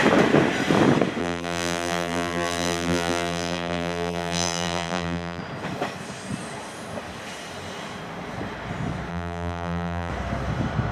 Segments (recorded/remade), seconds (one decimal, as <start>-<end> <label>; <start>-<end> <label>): 0.0-1.2 recorded; 1.2-5.4 remade; 5.4-9.1 recorded; 9.1-10.1 remade; 10.1-10.9 recorded